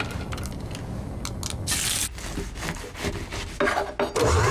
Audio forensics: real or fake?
real